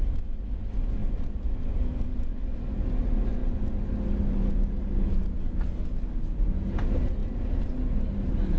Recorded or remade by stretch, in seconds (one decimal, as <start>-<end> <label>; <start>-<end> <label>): 0.0-8.6 recorded